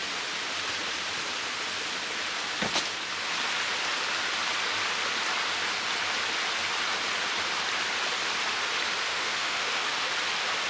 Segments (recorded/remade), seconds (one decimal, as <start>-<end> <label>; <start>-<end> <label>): 0.0-9.1 recorded; 9.1-10.1 remade; 10.1-10.7 recorded